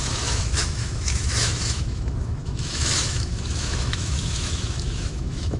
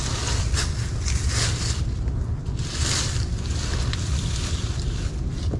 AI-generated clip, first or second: first